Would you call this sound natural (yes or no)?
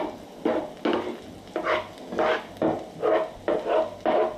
yes